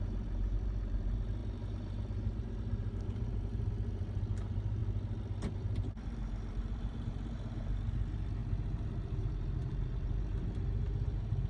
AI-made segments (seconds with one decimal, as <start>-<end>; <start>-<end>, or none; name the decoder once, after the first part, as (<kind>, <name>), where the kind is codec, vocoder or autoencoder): 0.0-4.8 (vocoder, BigVGAN v2); 5.5-11.5